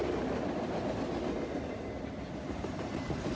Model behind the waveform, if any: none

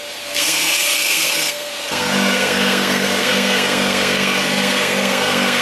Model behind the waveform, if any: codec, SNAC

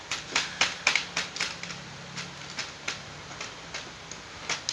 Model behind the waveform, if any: none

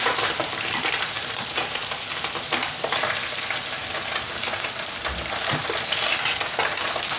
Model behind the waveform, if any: none